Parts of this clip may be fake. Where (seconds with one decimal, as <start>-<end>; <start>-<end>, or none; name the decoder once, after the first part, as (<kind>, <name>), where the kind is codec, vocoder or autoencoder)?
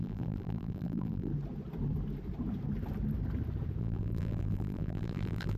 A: 0.0-1.3 (vocoder, BigVGAN v2); 3.8-5.6